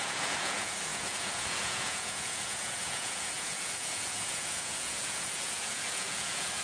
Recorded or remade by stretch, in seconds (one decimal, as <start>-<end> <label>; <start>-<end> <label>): 0.0-6.6 remade